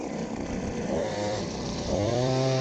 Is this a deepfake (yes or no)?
yes